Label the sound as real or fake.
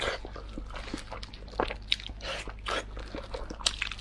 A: real